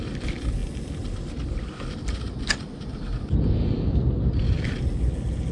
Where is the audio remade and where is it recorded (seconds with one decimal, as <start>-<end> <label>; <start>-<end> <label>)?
0.0-5.5 recorded